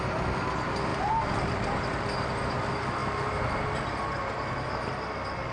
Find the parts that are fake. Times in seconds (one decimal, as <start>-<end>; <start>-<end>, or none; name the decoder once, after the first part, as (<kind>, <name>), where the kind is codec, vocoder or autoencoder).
0.9-2.0 (vocoder, BigVGAN v2); 3.0-3.6